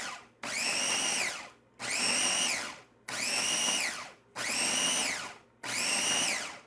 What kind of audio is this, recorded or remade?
recorded